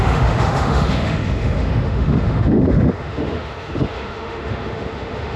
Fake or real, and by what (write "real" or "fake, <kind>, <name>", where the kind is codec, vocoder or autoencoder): fake, autoencoder, DAC-VAE